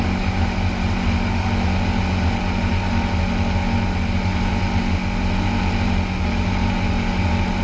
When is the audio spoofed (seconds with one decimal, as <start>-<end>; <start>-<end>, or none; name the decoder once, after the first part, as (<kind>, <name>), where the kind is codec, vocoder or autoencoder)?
none